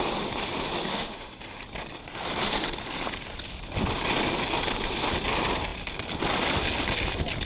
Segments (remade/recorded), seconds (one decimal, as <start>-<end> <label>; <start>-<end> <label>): 0.0-0.9 recorded; 0.9-1.6 remade; 1.6-7.5 recorded